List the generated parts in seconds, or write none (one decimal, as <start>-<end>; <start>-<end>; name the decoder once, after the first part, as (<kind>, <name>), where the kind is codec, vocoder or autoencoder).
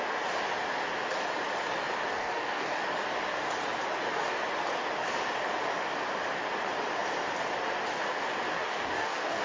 2.1-2.8 (codec, DAC); 8.5-9.4